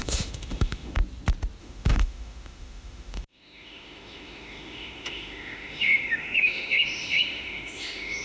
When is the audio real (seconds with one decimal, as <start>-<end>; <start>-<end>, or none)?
1.0-1.6